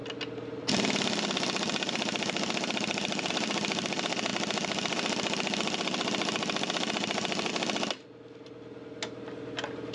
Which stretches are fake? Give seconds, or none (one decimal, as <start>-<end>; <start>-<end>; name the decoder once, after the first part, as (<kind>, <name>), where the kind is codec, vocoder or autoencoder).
none